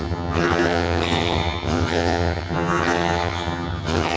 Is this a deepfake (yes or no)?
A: yes